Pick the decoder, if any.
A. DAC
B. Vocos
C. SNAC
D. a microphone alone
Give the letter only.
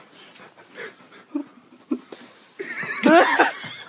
D